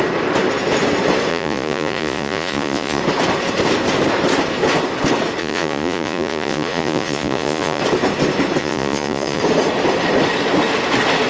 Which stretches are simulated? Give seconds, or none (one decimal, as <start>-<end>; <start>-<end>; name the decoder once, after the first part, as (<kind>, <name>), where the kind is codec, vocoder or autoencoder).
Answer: 1.3-3.0 (vocoder, Vocos); 5.4-7.8; 8.6-9.4